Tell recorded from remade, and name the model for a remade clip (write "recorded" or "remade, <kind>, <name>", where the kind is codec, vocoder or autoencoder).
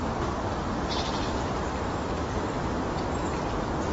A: recorded